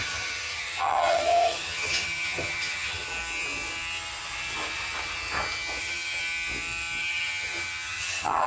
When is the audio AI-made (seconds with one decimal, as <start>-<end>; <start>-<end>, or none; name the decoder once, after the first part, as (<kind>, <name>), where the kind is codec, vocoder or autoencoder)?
0.0-3.1 (vocoder, HiFi-GAN); 5.8-6.2; 7.0-8.5